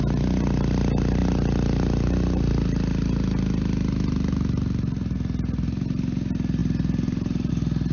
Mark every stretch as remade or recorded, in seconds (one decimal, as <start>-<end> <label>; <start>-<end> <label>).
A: 0.0-7.9 recorded